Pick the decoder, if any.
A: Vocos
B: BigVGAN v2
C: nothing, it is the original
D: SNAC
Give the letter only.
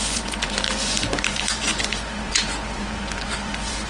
A